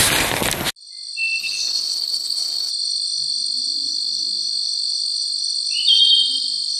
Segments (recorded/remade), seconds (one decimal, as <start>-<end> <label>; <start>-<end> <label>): 0.0-1.4 recorded; 1.4-2.7 remade; 2.7-6.8 recorded